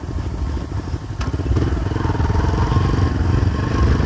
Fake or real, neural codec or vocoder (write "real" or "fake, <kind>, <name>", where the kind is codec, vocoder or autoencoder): real